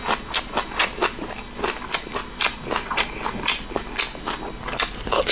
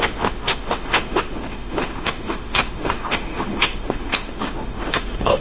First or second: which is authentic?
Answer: first